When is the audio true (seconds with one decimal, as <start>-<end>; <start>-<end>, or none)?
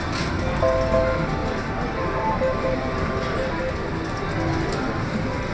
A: 0.0-1.4; 3.6-5.5